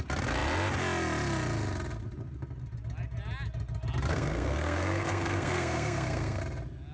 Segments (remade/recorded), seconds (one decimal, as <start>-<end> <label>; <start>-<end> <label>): 0.0-4.1 recorded; 4.1-6.4 remade; 6.4-6.9 recorded